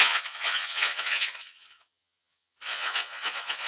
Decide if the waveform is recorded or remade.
remade